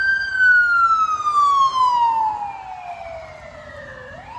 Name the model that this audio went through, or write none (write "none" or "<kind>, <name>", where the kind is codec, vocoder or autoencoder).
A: none